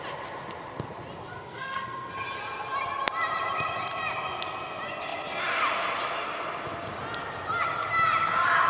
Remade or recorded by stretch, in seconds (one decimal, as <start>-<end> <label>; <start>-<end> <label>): 0.0-1.3 recorded; 1.3-2.1 remade; 2.1-8.7 recorded